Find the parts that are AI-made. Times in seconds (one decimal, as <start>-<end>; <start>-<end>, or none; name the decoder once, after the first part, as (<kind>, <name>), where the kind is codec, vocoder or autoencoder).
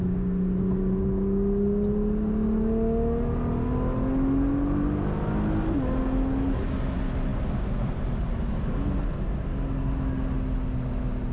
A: none